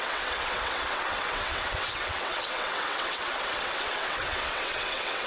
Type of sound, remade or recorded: remade